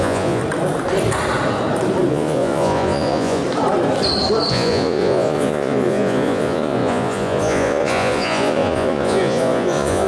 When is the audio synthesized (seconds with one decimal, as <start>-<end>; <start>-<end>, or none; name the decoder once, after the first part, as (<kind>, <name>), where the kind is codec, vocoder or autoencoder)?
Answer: 0.0-0.4 (vocoder, Vocos); 2.1-3.4; 4.5-10.1